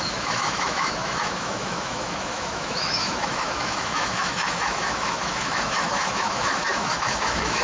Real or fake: fake